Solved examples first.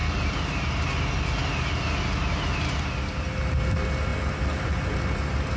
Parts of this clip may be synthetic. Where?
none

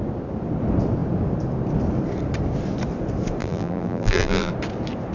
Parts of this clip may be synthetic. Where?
3.4-4.5 (vocoder, BigVGAN v2)

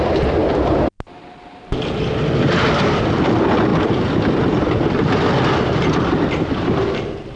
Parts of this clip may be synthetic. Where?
none

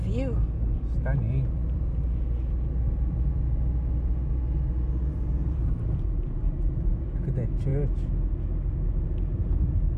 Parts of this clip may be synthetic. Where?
5.1-6.7 (vocoder, BigVGAN v2)

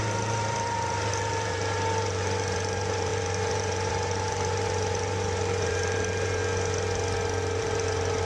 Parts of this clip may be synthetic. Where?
0.0-6.4 (vocoder, BigVGAN v2); 7.6-8.2

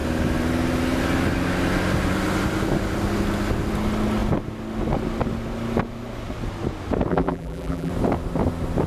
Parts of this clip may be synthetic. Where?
7.1-7.9 (vocoder, BigVGAN v2)